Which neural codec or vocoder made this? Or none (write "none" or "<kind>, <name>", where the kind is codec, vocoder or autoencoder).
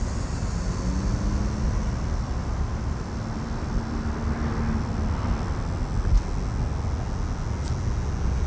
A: none